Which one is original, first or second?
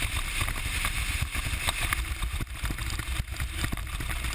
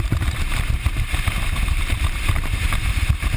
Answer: first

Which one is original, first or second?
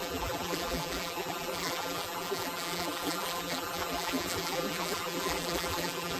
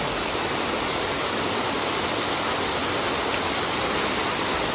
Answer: second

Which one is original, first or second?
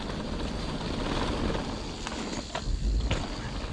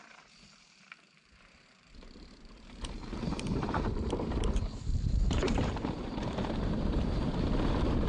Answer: first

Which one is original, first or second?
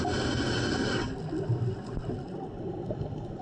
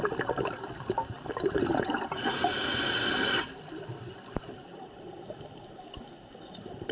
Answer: first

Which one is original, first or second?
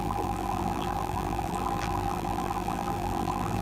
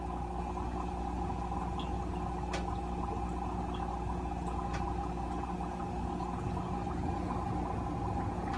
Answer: second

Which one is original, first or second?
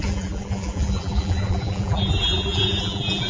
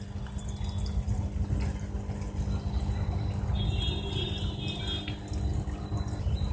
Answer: second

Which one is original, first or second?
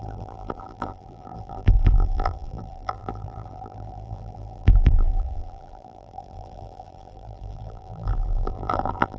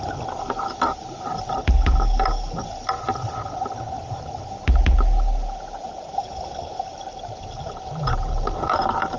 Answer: second